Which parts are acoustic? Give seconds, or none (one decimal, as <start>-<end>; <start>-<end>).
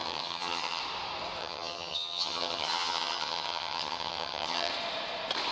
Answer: 0.8-1.4; 4.7-5.5